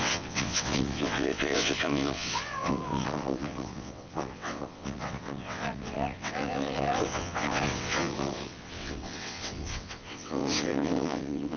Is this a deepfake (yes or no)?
yes